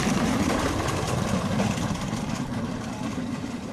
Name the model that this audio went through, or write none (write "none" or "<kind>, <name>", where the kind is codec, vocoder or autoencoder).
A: vocoder, BigVGAN v2